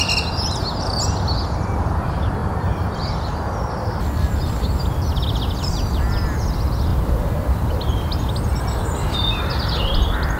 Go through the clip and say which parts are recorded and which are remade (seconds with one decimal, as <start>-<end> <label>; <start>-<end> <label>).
0.0-2.4 recorded; 2.4-3.9 remade; 3.9-6.9 recorded; 6.9-8.3 remade; 8.3-10.4 recorded